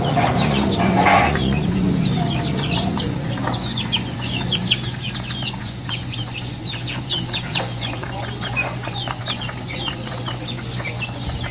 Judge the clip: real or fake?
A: fake